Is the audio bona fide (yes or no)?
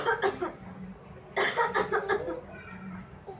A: yes